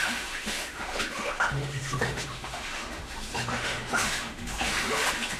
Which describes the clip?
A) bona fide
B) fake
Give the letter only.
B